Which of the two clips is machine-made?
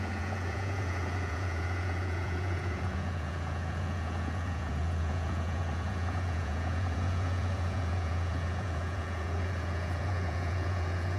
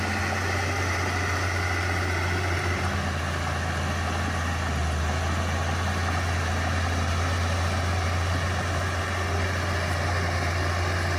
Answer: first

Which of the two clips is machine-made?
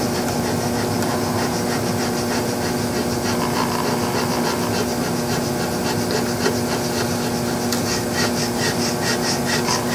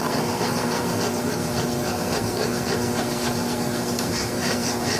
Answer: second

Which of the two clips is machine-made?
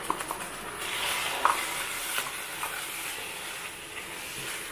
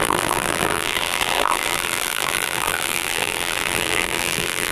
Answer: second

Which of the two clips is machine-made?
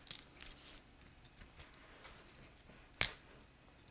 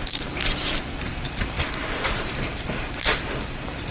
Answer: second